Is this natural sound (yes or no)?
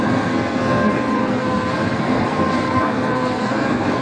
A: no